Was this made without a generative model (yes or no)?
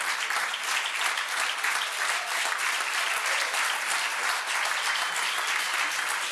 yes